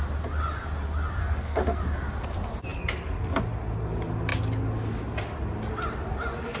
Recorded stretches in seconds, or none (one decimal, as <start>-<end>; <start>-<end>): 0.0-1.2; 1.8-6.6